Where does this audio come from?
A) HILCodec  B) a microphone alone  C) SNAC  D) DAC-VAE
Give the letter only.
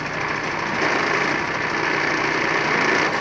B